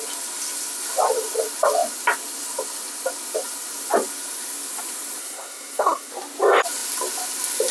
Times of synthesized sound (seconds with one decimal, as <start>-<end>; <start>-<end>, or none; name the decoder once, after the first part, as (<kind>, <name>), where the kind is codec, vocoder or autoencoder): 5.2-6.1 (codec, SNAC)